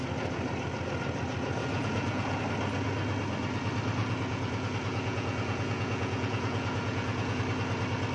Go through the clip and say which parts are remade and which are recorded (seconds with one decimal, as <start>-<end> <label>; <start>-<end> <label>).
0.0-1.6 recorded; 1.6-2.4 remade; 2.4-4.0 recorded; 4.0-7.4 remade; 7.4-8.1 recorded